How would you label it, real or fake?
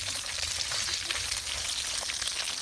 real